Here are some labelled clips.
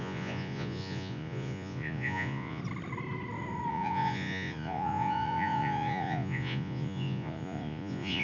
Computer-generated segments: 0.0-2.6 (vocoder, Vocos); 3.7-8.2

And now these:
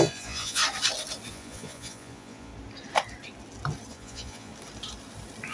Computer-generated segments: 0.0-0.6 (vocoder, Vocos); 1.3-2.5; 3.9-4.5

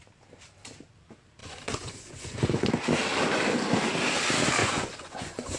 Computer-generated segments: 1.4-2.7 (vocoder, Vocos); 4.6-5.6

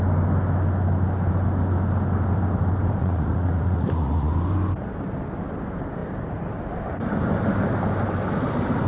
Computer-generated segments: 3.0-4.3 (vocoder, Vocos)

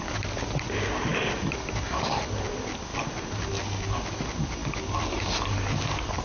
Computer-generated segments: none

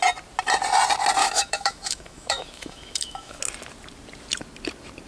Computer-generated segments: 1.2-3.4 (autoencoder, DAC-VAE)

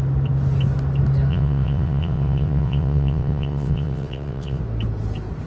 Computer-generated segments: 1.3-4.6 (vocoder, WaveNeXt)

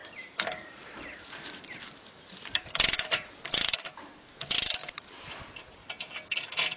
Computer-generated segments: 0.0-4.1 (vocoder, BigVGAN v2); 4.8-5.8